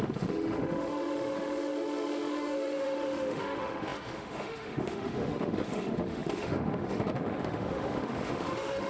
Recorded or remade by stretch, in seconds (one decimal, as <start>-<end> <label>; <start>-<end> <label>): 0.0-8.9 remade

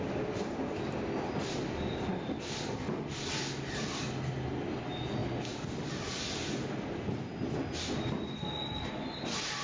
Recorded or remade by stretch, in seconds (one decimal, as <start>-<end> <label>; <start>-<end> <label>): 0.0-9.6 recorded

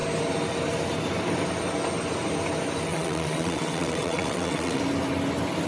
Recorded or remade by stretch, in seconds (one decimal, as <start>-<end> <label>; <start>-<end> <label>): 0.0-2.9 recorded; 2.9-4.8 remade; 4.8-5.7 recorded